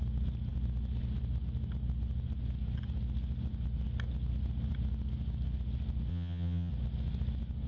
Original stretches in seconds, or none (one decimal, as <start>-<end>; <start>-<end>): 0.0-6.1; 6.7-7.7